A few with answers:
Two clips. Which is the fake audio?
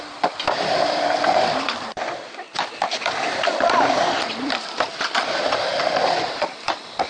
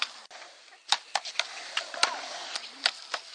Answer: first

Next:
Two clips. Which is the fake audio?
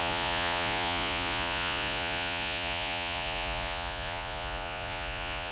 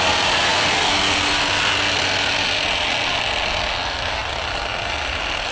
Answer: first